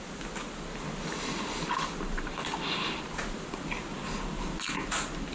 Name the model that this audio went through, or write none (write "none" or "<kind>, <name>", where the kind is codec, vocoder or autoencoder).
none